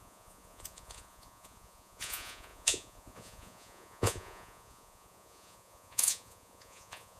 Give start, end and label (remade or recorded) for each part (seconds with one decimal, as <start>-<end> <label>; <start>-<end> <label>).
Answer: 0.0-7.2 remade